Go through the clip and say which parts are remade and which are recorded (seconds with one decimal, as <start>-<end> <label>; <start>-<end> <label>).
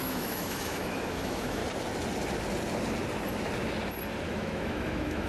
0.0-1.6 remade; 1.6-4.3 recorded; 4.3-5.3 remade